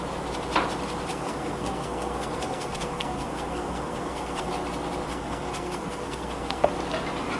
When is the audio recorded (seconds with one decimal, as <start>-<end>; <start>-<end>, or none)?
0.0-1.1; 4.5-5.1; 6.7-7.4